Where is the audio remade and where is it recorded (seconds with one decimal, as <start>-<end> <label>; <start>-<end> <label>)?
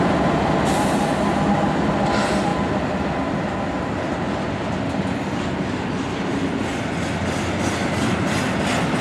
0.0-9.0 recorded